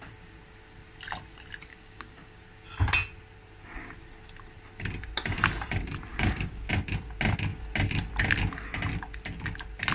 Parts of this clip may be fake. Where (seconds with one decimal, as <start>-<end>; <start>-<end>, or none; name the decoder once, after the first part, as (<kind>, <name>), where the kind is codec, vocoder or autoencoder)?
1.7-2.4 (codec, DAC); 6.1-6.7